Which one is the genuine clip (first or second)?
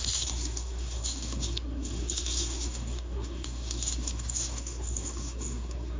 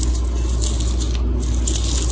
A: second